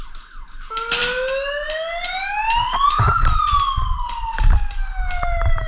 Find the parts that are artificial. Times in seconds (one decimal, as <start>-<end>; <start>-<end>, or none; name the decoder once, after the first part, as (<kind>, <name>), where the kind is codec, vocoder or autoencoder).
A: none